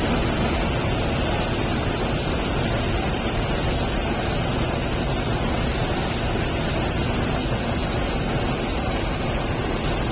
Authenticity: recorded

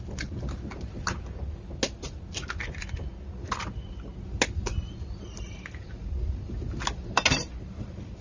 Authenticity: recorded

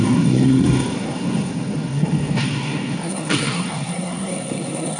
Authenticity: remade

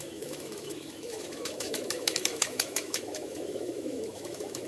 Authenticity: remade